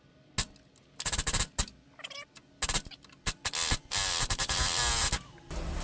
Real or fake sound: real